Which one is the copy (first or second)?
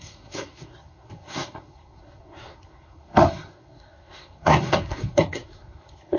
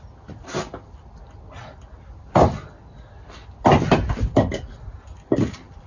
first